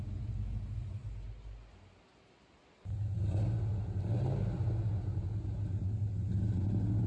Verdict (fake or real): real